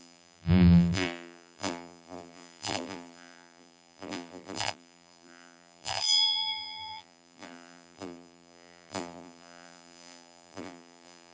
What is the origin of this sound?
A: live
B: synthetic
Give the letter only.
B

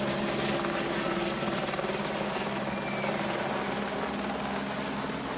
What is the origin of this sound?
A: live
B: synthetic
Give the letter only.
A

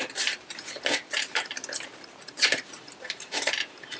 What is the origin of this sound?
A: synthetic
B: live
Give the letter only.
A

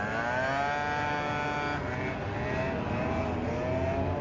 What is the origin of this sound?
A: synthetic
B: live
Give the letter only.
B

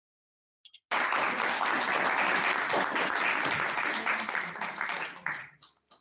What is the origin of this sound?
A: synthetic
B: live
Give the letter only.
B